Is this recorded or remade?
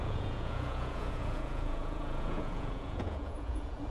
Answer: remade